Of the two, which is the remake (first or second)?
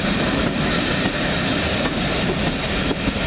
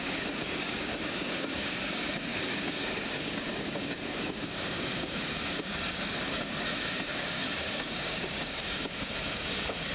second